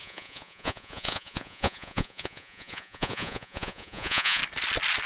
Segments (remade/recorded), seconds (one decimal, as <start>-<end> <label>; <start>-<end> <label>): 0.0-4.4 remade; 4.4-5.1 recorded